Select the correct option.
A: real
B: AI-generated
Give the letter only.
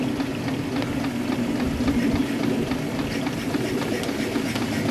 A